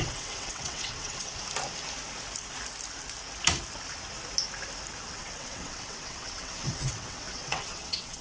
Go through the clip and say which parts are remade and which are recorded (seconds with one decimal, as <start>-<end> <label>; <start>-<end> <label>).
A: 0.0-1.3 remade; 1.3-5.2 recorded; 5.2-8.2 remade